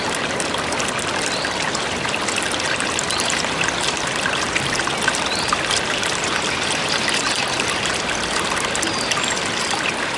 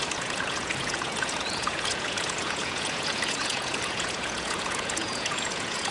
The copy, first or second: second